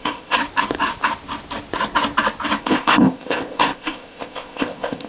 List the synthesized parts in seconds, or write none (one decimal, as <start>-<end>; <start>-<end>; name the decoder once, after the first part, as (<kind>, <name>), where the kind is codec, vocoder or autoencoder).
0.0-0.4 (codec, ZipCodec); 2.6-5.1